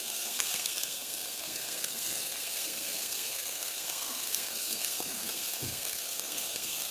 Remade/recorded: remade